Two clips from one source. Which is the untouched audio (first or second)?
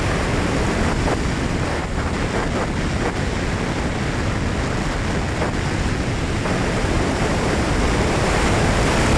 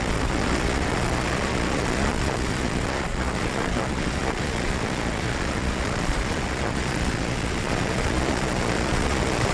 first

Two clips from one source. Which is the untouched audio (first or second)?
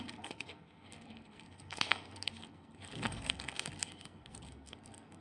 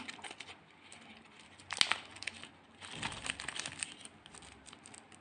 second